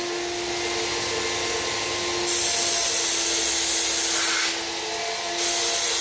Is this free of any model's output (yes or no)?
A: yes